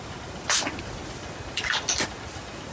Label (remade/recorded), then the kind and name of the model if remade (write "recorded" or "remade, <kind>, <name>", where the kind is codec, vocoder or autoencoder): recorded